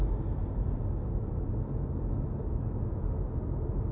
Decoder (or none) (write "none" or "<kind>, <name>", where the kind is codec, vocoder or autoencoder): none